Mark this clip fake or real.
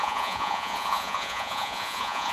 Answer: fake